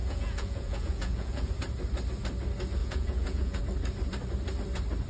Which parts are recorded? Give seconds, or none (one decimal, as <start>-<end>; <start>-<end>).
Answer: 1.5-2.8; 3.6-5.1

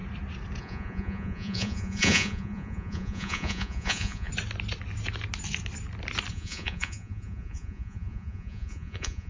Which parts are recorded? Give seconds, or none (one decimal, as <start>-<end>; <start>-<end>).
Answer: 0.0-0.6; 4.3-6.3

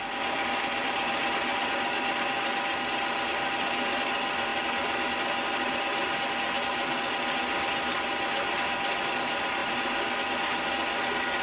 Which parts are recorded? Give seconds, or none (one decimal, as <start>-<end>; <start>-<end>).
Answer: 0.0-11.4